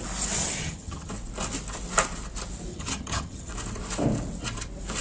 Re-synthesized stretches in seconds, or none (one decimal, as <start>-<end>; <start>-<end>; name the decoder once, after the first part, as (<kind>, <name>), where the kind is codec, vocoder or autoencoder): 0.4-1.1 (vocoder, HiFi-GAN); 2.7-3.5